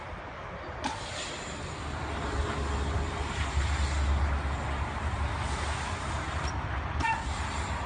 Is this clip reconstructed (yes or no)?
no